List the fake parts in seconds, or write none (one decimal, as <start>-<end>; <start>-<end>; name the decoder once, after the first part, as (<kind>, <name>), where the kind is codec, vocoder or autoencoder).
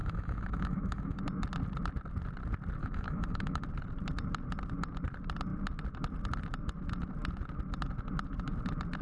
0.0-1.2 (autoencoder, DAC-VAE); 2.8-3.6